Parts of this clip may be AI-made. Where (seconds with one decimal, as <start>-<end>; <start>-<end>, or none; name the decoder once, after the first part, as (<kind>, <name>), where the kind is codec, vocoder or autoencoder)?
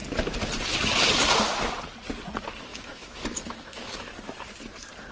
2.7-4.1 (autoencoder, DAC-VAE)